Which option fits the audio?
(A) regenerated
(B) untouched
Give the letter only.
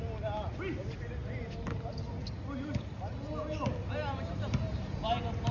B